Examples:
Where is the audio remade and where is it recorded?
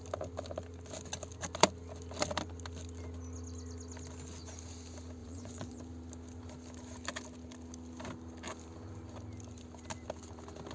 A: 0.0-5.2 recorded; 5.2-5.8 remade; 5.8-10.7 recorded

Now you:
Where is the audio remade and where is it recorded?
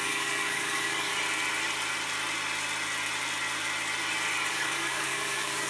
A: 0.0-1.1 remade; 1.1-4.5 recorded; 4.5-5.7 remade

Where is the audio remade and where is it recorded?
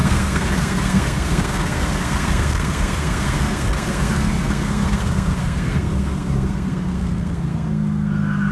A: 0.0-8.5 remade